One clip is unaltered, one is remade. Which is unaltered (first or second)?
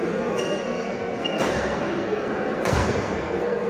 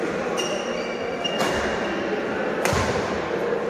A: second